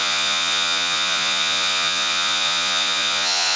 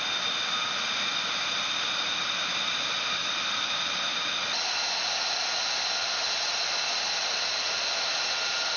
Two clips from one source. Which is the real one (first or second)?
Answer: second